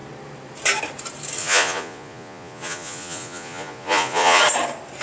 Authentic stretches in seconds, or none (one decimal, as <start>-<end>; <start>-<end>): 0.0-1.4; 4.4-5.0